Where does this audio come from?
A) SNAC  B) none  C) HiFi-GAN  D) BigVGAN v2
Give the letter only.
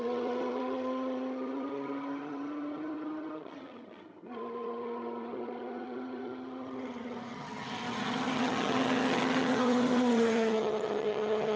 C